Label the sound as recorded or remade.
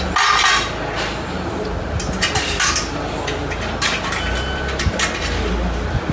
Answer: recorded